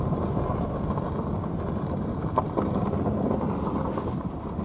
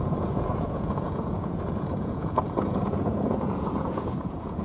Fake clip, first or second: second